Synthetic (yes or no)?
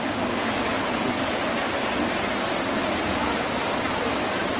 no